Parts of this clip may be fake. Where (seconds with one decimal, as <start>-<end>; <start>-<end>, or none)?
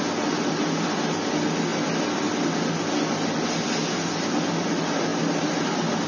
5.1-5.6